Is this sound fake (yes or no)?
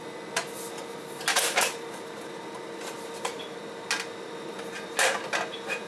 no